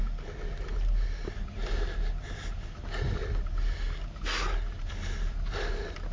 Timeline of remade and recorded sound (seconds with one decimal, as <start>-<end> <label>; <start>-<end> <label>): 0.0-6.1 recorded